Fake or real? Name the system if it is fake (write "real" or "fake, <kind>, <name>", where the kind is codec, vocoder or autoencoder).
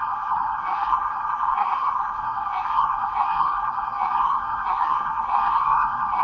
fake, codec, SNAC